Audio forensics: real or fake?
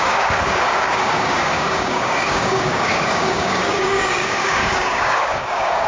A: fake